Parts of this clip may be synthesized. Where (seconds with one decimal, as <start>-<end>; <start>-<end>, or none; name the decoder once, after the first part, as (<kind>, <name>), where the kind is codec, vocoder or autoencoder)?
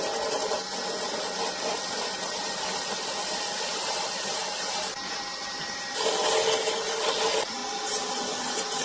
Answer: none